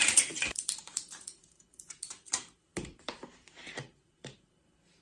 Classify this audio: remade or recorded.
remade